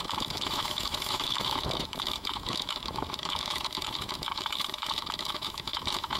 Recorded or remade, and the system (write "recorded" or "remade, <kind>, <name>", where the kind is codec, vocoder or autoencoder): remade, autoencoder, DAC-VAE